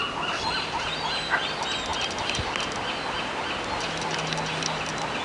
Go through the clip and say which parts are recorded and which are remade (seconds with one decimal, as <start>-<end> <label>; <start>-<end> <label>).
0.0-5.2 recorded